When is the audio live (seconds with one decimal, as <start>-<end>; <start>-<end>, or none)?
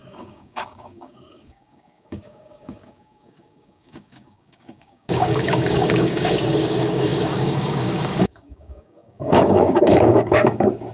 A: none